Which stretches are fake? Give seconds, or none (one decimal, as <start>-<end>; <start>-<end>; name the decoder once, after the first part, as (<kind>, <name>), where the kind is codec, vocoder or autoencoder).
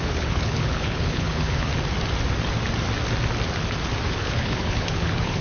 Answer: 0.0-1.7 (codec, HILCodec); 4.1-5.4